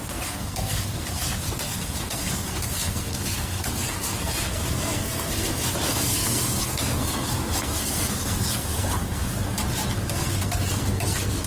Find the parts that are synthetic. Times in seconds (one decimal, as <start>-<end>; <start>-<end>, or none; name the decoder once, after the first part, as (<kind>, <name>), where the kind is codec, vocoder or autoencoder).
0.0-9.6 (codec, SNAC); 10.1-11.5